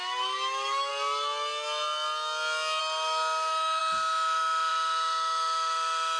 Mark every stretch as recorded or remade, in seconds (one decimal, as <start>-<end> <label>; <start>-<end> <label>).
0.0-0.9 remade; 0.9-2.8 recorded; 2.8-6.2 remade